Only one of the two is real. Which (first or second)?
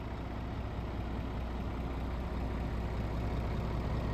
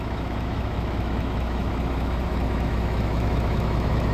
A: first